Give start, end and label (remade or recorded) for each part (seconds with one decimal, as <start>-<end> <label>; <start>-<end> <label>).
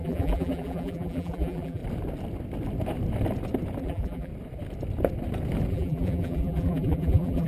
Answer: 0.0-1.8 remade; 1.8-3.8 recorded; 3.8-4.3 remade; 4.3-5.7 recorded; 5.7-7.5 remade